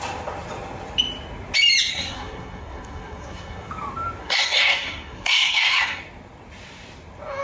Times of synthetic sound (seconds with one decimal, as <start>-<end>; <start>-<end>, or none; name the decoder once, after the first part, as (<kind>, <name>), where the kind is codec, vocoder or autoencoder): 1.9-3.7 (codec, SNAC); 4.2-6.0